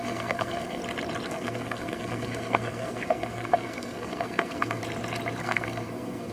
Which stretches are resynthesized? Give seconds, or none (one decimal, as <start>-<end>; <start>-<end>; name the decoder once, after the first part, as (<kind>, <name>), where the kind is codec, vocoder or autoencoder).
0.0-0.8 (codec, SNAC); 1.3-4.8; 5.4-6.3